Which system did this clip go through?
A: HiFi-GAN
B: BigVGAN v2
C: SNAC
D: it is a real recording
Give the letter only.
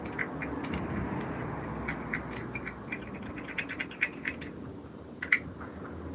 D